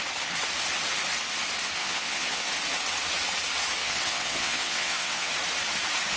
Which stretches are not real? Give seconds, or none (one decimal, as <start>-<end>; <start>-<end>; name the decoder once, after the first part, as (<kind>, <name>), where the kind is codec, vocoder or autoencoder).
1.8-2.5 (vocoder, WaveNeXt); 3.8-5.3